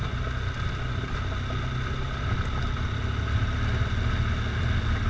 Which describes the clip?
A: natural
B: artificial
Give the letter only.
A